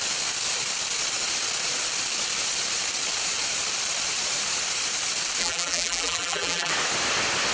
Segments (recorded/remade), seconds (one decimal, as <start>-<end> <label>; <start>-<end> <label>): 0.0-5.4 recorded; 5.4-6.7 remade; 6.7-7.5 recorded